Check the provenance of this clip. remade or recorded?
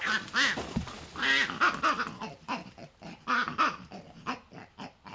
recorded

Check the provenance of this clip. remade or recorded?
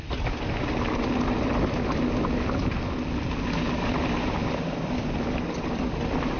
recorded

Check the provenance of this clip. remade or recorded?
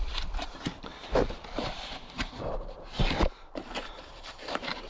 remade